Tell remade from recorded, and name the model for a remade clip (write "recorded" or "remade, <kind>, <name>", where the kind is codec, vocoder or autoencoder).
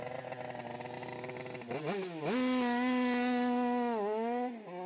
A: recorded